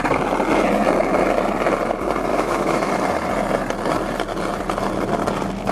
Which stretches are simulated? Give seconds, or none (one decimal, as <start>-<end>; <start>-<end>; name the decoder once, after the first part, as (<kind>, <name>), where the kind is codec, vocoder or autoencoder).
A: 2.3-2.9 (autoencoder, DAC-VAE)